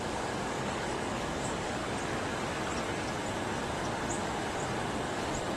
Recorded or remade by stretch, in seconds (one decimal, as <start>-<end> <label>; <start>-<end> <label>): 0.0-1.8 remade; 1.8-5.6 recorded